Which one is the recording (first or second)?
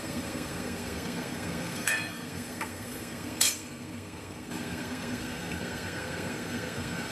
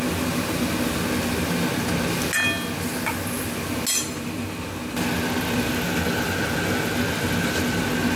second